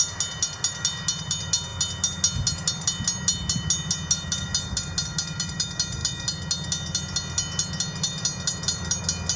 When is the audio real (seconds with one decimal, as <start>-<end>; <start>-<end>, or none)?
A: 0.0-9.4